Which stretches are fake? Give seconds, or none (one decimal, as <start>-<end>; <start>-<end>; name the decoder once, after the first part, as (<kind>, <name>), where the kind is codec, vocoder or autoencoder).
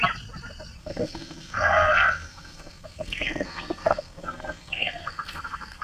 0.8-5.8 (codec, SNAC)